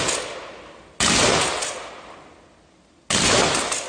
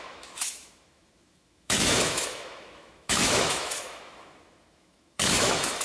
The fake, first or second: second